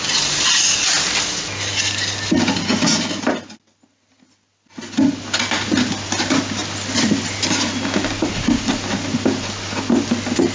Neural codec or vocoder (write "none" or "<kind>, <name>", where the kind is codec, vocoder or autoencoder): none